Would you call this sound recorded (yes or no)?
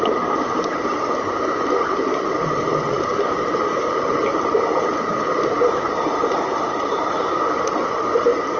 no